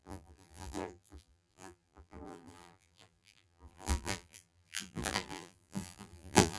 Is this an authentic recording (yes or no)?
no